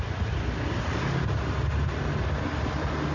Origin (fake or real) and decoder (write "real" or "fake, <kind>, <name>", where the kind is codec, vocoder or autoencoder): real